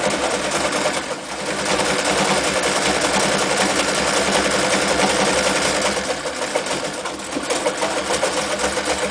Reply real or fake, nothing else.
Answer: real